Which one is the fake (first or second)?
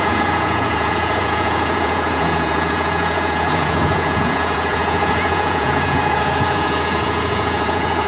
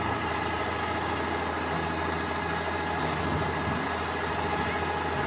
first